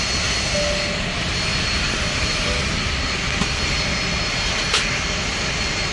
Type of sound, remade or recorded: recorded